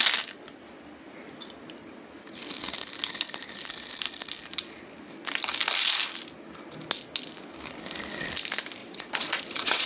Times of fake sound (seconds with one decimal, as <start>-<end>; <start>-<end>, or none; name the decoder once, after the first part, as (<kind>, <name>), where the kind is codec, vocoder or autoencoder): 8.8-9.9 (vocoder, Vocos)